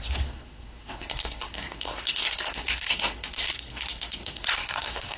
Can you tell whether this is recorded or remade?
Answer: remade